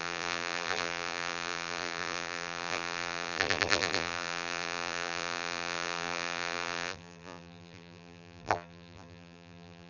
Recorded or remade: remade